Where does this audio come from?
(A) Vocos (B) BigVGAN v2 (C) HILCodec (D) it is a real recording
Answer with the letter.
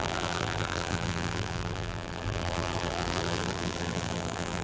B